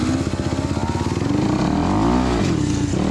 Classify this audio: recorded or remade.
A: recorded